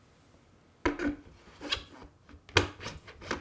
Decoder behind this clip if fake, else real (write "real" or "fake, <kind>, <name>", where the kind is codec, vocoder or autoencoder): real